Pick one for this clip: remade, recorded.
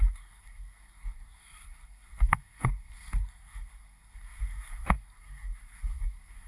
remade